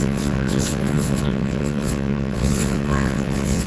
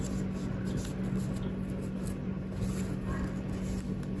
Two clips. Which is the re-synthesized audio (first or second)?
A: first